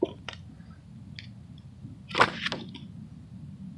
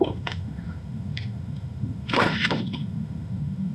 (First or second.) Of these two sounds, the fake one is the second